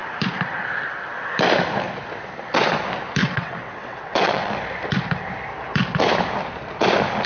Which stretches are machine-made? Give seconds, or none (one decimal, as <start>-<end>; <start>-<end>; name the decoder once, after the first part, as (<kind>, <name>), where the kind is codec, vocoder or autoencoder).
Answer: 3.2-4.5 (vocoder, WaveNeXt)